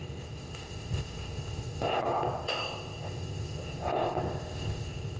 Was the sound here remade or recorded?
remade